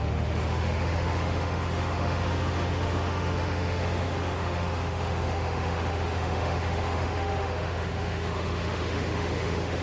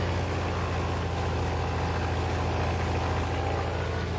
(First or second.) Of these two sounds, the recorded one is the second